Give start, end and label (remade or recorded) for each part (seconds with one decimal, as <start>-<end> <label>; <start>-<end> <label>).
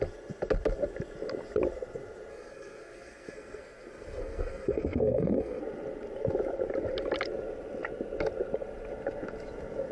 0.0-2.3 recorded; 2.3-5.6 remade; 5.6-9.9 recorded